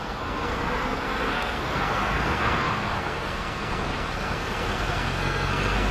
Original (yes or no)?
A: no